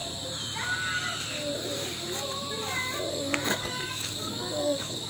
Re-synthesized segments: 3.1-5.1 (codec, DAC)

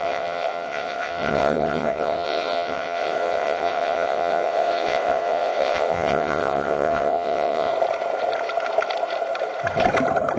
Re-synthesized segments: 0.0-7.7 (vocoder, WaveNeXt)

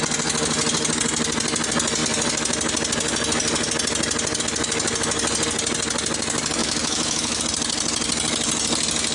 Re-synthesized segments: 6.6-7.4 (autoencoder, DAC-VAE)

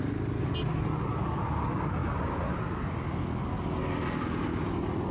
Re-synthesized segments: none

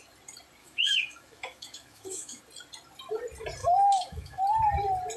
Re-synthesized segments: 0.6-2.4 (autoencoder, DAC-VAE); 3.6-4.4

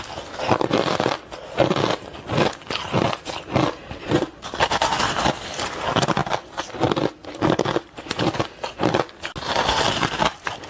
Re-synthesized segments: 4.0-4.5 (vocoder, Vocos)

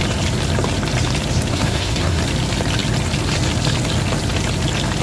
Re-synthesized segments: 1.5-2.2 (codec, SNAC)

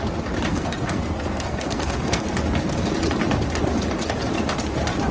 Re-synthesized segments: 0.5-2.3 (codec, SNAC)